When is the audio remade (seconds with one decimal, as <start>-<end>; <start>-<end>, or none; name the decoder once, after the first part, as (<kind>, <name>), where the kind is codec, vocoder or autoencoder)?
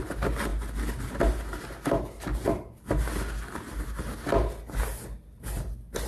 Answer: none